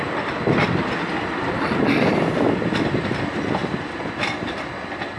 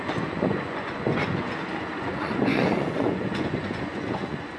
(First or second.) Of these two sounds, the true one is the first